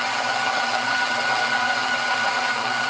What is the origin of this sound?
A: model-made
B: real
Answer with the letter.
A